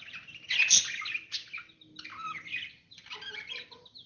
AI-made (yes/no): no